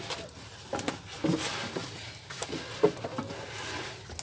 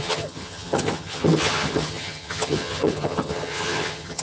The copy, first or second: second